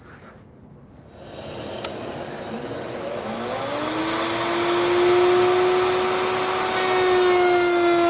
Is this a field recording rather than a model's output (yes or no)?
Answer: yes